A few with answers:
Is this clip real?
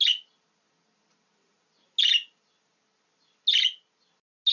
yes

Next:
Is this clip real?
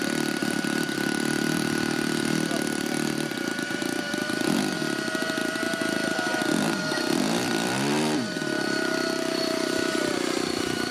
no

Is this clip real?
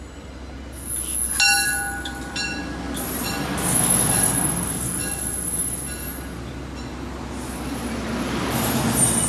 yes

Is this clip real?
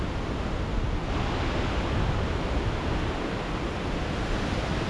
yes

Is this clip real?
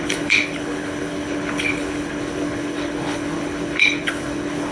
no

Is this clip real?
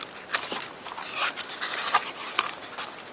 yes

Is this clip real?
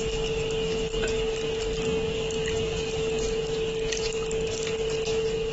no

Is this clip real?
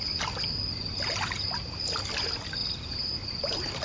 yes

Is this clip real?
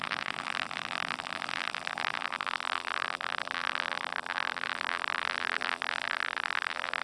no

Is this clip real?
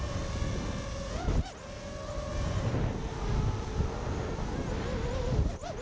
yes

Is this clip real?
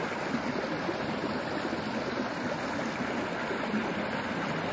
yes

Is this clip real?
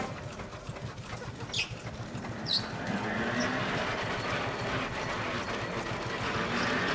yes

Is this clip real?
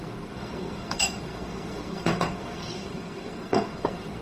no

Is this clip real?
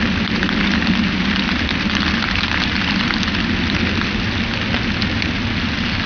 yes